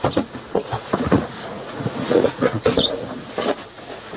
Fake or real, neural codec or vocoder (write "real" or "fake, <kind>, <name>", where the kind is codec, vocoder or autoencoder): fake, vocoder, Vocos